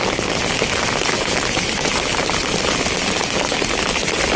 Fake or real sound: real